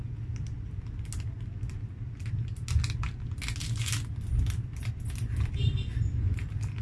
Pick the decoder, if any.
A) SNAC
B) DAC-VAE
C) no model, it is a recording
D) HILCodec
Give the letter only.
C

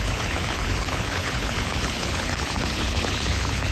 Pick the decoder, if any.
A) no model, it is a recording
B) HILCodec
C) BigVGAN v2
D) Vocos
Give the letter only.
B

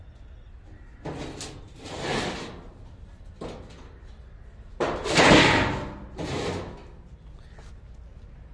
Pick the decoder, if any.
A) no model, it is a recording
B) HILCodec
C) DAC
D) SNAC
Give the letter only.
A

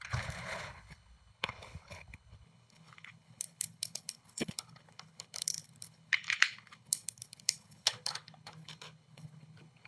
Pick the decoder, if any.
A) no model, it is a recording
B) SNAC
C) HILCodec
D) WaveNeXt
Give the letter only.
C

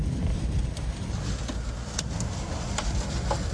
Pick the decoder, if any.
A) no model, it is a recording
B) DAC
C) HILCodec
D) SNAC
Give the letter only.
A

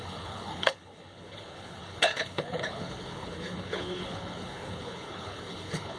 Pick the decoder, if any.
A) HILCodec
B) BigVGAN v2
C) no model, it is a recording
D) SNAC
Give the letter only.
A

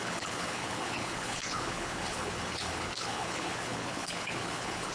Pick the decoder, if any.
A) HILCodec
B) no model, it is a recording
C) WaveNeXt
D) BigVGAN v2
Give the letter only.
A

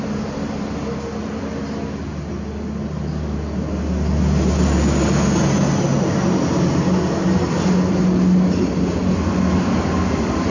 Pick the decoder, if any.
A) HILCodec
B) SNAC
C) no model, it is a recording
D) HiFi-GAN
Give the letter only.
C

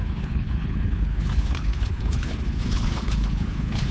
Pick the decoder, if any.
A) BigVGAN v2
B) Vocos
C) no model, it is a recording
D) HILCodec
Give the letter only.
D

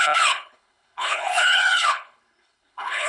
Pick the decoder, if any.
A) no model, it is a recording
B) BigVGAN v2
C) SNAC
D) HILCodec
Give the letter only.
D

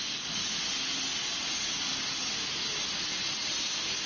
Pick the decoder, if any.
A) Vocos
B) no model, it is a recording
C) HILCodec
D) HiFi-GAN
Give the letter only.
B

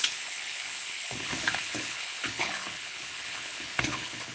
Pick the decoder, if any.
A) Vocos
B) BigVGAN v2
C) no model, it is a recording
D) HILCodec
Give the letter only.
D